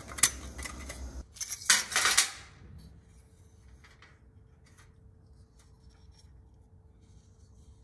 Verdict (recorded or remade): recorded